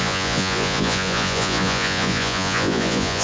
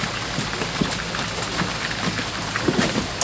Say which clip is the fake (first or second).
first